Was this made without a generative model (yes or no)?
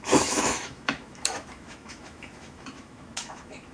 no